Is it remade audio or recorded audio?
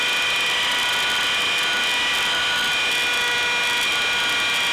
recorded